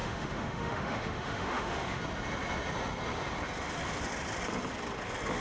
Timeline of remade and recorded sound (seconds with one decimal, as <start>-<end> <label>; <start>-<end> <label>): 0.0-2.0 remade; 2.0-5.4 recorded